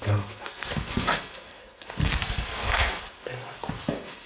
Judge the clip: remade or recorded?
remade